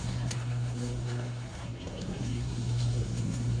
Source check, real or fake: fake